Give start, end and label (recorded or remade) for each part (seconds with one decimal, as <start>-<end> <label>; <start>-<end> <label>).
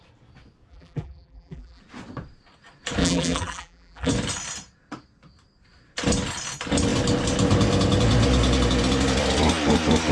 0.0-0.7 recorded; 0.7-1.8 remade; 1.8-3.0 recorded; 3.0-4.1 remade; 4.1-10.1 recorded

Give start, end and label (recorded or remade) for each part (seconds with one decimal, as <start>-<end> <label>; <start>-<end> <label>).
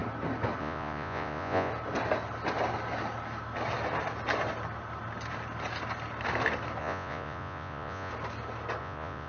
0.0-0.6 recorded; 0.6-1.7 remade; 1.7-6.8 recorded; 6.8-8.1 remade; 8.1-8.8 recorded; 8.8-9.3 remade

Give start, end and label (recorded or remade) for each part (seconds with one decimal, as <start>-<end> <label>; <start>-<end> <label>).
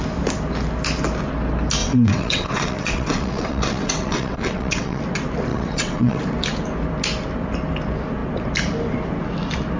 0.0-1.8 recorded; 1.8-5.0 remade; 5.0-5.5 recorded; 5.5-6.2 remade; 6.2-9.8 recorded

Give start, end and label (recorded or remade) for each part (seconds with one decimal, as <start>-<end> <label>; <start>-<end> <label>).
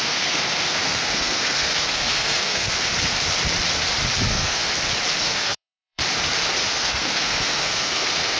0.0-2.9 remade; 2.9-4.3 recorded; 4.3-4.7 remade; 4.7-5.2 recorded; 5.2-6.0 remade; 6.0-6.6 recorded; 6.6-8.4 remade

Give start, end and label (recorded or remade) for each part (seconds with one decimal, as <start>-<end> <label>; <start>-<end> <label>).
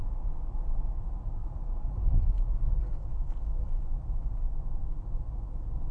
0.0-1.4 recorded; 1.4-2.1 remade; 2.1-5.9 recorded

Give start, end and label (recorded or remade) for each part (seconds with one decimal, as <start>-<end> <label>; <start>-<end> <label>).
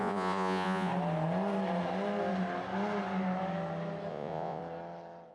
0.0-0.9 remade; 0.9-4.1 recorded; 4.1-4.6 remade; 4.6-5.3 recorded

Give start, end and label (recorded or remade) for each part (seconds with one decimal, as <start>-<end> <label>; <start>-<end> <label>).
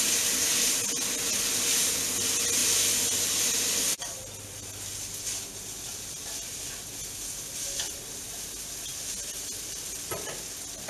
0.0-10.9 recorded